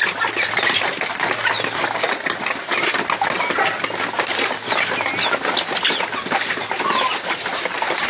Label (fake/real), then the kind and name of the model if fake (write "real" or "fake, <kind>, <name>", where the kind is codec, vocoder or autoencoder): real